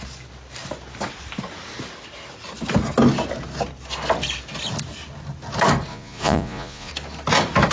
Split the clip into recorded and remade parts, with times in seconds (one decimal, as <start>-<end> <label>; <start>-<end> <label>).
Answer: 0.0-5.9 recorded; 5.9-6.9 remade; 6.9-7.7 recorded